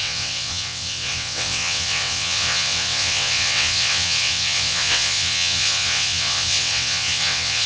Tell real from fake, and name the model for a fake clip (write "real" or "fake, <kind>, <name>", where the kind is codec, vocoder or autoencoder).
fake, vocoder, WaveNeXt